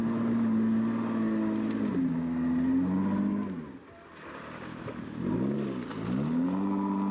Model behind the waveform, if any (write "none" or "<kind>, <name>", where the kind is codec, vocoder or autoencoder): none